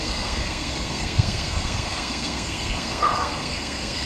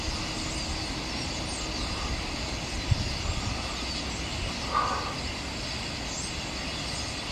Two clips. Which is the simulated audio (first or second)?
first